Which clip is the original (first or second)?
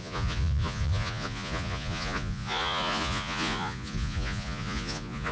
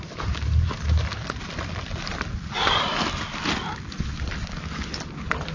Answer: second